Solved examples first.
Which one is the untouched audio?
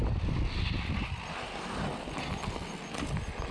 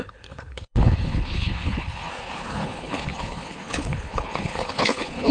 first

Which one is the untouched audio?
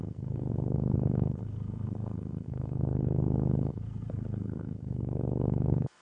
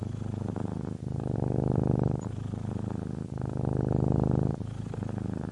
second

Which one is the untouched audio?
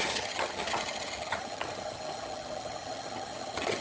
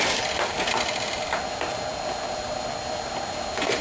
second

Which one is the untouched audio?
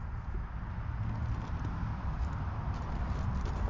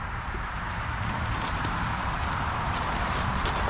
first